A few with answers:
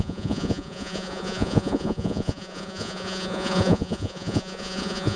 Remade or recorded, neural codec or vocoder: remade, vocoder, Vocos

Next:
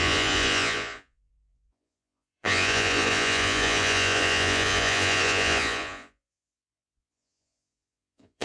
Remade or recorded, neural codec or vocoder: remade, vocoder, Vocos